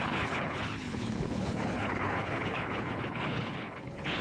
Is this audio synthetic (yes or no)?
yes